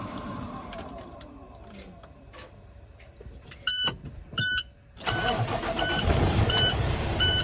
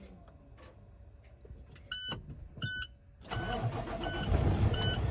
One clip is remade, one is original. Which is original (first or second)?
second